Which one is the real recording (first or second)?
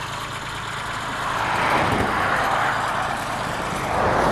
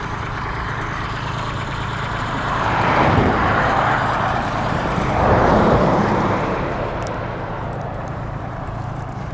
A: first